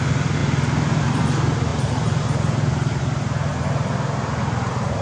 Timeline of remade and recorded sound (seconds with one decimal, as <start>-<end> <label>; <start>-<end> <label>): 0.0-1.7 recorded; 1.7-3.0 remade; 3.0-5.0 recorded

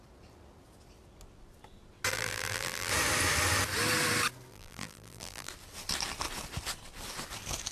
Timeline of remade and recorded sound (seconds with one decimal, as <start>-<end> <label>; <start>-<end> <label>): 0.0-2.1 recorded; 2.1-2.9 remade; 2.9-4.5 recorded; 4.5-5.5 remade; 5.5-7.7 recorded

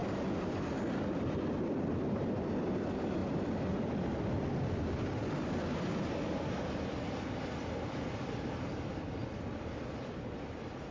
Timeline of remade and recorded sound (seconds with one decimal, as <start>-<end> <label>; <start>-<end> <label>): 0.0-0.7 recorded; 0.7-9.2 remade; 9.2-9.9 recorded; 9.9-10.9 remade

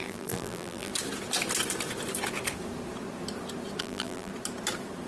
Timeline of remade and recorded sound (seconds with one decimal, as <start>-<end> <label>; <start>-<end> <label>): 0.0-0.9 remade; 0.9-3.8 recorded; 3.8-4.3 remade; 4.3-5.1 recorded

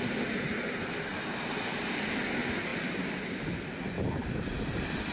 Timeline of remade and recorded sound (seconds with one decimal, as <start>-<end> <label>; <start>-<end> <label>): 0.0-4.2 recorded; 4.2-5.1 remade

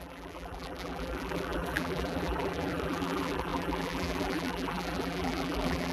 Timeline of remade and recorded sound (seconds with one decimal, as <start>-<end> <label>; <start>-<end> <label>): 0.0-5.9 remade